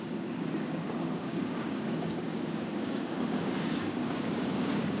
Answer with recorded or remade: remade